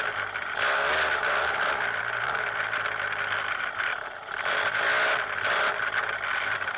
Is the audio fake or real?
real